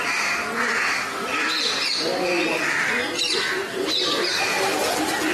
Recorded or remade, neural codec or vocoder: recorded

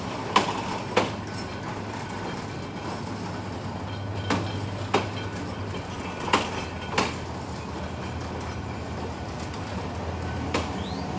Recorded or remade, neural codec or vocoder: recorded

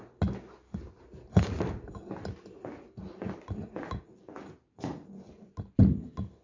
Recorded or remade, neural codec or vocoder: recorded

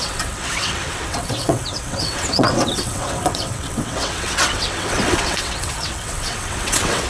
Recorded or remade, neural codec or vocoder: remade, vocoder, WaveNeXt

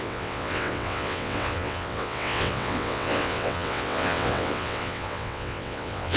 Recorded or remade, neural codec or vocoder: remade, vocoder, WaveNeXt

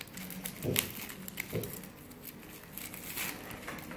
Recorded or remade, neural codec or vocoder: recorded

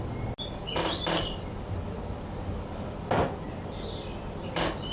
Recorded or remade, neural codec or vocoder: recorded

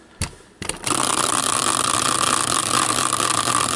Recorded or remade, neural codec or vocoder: recorded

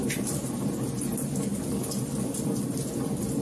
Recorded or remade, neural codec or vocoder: recorded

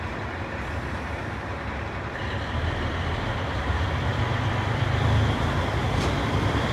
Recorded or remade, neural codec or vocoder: remade, vocoder, BigVGAN v2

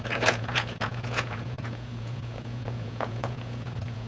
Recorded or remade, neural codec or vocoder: remade, vocoder, Vocos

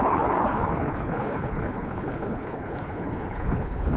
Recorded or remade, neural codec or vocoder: remade, codec, HILCodec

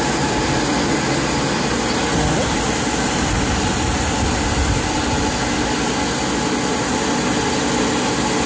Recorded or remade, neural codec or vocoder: recorded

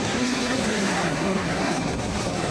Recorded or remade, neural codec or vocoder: remade, codec, SNAC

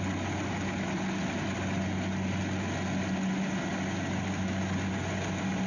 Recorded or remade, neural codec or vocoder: recorded